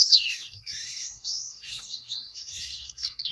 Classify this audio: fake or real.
fake